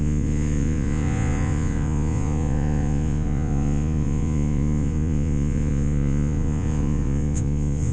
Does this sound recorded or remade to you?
remade